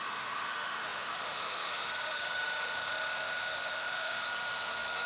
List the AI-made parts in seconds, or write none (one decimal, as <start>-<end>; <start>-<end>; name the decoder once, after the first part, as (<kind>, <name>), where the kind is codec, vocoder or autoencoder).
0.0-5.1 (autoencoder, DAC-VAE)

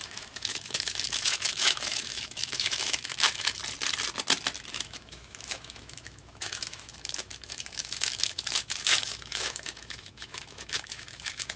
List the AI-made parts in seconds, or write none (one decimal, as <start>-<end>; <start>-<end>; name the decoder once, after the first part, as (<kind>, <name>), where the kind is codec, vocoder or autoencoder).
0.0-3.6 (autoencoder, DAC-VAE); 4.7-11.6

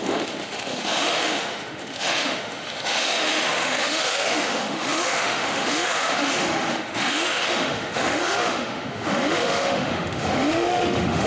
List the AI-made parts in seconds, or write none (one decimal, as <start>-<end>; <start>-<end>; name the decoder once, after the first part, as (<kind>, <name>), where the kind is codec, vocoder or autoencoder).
0.0-11.3 (autoencoder, DAC-VAE)

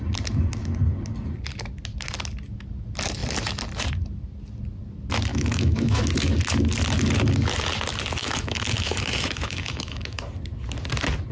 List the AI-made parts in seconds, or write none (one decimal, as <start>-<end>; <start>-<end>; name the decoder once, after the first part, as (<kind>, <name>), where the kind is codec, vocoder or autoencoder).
5.3-6.0 (autoencoder, DAC-VAE); 8.2-10.2

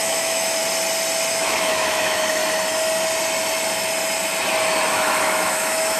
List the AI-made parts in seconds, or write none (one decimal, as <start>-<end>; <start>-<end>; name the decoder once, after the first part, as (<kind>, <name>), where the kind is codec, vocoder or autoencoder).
0.0-0.6 (autoencoder, DAC-VAE); 1.3-2.4; 4.9-6.0